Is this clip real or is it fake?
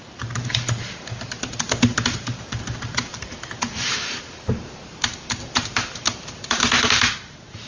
fake